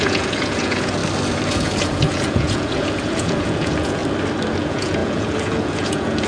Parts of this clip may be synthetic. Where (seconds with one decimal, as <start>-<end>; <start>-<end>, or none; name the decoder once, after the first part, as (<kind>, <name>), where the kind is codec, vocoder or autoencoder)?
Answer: 0.0-1.0 (vocoder, Vocos); 1.5-4.0; 4.6-6.3